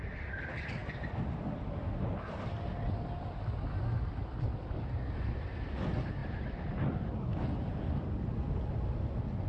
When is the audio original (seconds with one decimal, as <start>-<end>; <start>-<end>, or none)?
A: 0.0-9.5